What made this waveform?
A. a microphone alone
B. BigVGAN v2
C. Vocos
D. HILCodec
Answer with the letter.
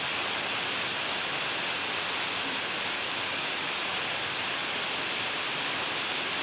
A